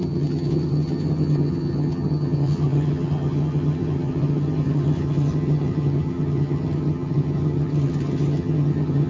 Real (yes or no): no